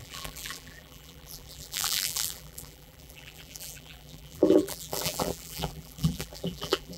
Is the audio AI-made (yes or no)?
yes